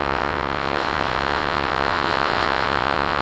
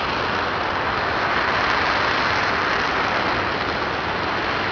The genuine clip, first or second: second